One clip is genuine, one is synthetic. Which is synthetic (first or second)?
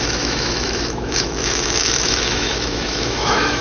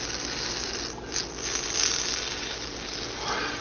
first